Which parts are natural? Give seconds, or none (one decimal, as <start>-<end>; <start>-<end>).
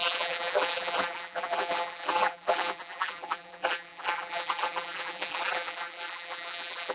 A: none